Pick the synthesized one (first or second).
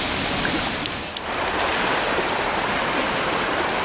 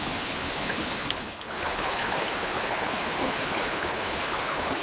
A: second